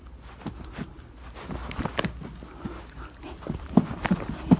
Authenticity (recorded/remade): recorded